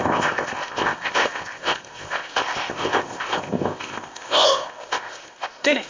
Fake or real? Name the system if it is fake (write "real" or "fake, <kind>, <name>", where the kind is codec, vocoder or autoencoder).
fake, codec, ZipCodec